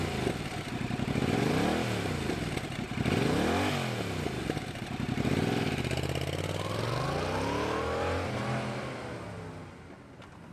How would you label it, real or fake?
real